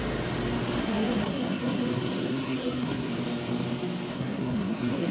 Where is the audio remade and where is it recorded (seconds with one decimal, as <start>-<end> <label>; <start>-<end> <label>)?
0.0-0.8 recorded; 0.8-3.1 remade; 3.1-4.1 recorded; 4.1-5.1 remade